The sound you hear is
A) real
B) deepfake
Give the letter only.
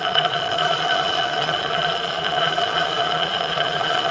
B